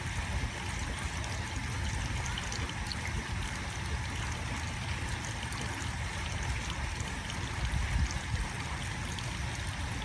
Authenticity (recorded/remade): recorded